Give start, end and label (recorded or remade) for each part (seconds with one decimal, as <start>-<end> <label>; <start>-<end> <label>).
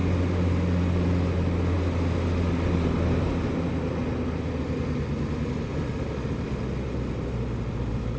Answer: 0.0-8.2 recorded